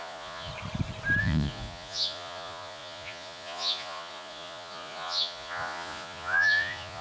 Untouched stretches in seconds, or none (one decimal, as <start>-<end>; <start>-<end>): 0.5-1.2